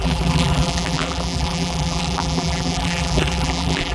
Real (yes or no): no